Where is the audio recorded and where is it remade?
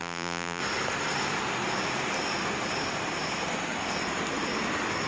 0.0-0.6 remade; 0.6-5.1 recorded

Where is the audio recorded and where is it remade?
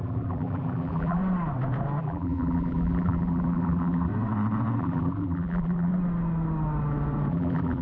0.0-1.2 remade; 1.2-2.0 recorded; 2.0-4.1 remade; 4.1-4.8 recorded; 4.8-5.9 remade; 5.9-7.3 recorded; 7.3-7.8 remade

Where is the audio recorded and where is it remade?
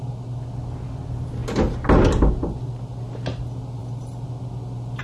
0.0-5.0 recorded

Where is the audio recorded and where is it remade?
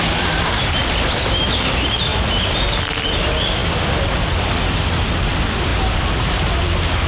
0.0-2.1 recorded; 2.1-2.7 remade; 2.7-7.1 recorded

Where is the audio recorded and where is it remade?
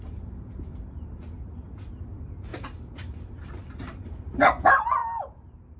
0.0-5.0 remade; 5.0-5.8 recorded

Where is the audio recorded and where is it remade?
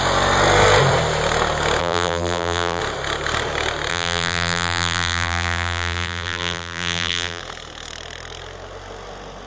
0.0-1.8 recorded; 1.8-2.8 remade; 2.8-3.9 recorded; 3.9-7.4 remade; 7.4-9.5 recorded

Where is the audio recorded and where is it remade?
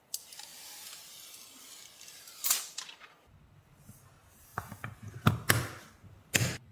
0.0-6.7 recorded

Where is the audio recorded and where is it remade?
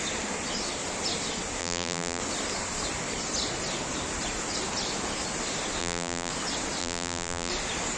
0.0-1.6 recorded; 1.6-2.2 remade; 2.2-5.8 recorded; 5.8-6.3 remade; 6.3-6.8 recorded; 6.8-7.5 remade; 7.5-8.0 recorded